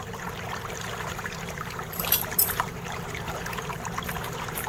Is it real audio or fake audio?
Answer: fake